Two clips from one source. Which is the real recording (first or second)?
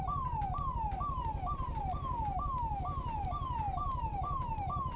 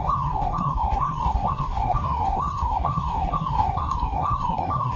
first